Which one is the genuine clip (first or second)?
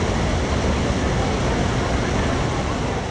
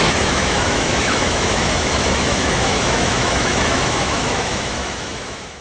first